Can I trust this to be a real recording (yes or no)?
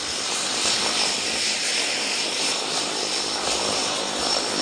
no